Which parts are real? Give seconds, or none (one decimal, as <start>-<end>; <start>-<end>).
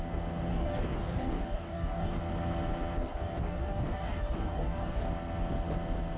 0.0-0.5; 2.2-3.0; 5.1-6.2